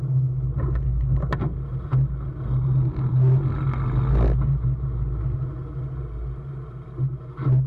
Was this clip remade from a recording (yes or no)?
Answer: no